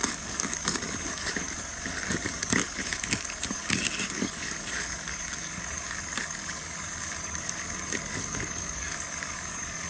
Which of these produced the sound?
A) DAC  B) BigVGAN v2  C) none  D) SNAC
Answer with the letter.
A